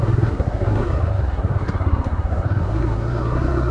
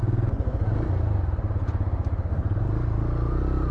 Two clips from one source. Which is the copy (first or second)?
first